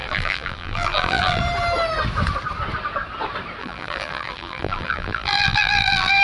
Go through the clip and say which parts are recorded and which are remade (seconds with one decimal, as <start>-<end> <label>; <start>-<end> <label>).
0.0-1.4 remade; 1.4-3.6 recorded; 3.6-6.2 remade